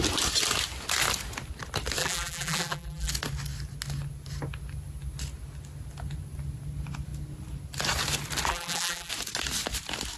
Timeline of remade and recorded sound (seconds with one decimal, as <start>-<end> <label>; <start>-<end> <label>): 0.0-2.0 recorded; 2.0-3.1 remade; 3.1-8.5 recorded; 8.5-9.1 remade; 9.1-10.2 recorded